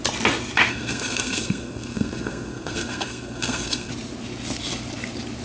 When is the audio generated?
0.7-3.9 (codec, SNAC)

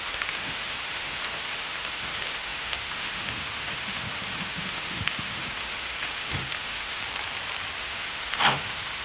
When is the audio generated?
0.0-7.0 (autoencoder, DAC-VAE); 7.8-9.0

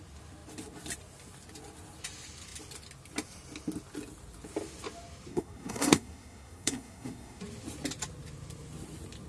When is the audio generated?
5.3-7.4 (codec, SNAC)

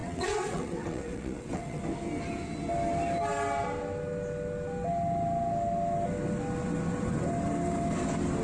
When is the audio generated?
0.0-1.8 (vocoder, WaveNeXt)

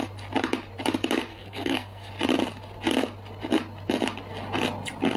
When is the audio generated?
1.3-2.1 (codec, SNAC)